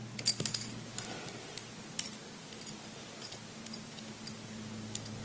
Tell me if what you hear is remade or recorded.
recorded